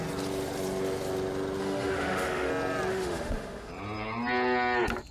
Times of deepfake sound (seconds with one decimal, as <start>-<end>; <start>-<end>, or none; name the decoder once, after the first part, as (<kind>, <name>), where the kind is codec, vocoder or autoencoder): 1.6-2.5 (autoencoder, DAC-VAE); 2.9-3.7